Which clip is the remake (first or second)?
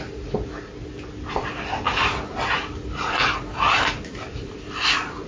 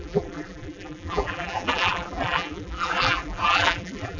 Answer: second